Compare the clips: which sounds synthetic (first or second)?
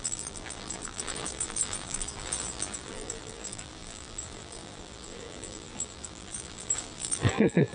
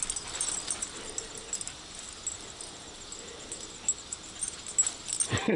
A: first